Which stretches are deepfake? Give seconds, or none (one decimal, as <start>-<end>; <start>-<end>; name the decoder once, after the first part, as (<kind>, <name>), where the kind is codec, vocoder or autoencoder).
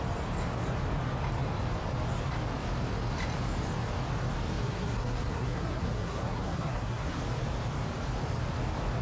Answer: 4.6-7.2 (codec, SNAC)